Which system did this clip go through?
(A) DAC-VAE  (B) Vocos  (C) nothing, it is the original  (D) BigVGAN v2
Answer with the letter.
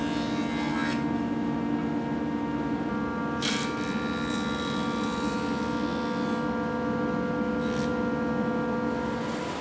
C